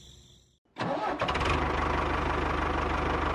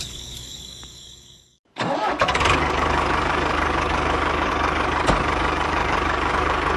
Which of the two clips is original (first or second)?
first